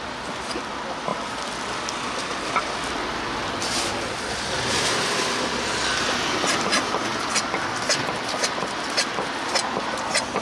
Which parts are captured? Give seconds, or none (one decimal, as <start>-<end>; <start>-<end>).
0.0-10.4